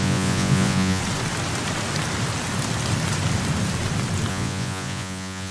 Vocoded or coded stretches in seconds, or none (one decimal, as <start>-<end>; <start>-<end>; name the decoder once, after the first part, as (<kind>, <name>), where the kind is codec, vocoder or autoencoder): 0.0-1.0 (vocoder, Vocos); 4.3-5.5